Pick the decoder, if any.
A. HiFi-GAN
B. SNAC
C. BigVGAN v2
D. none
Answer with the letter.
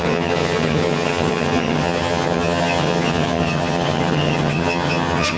A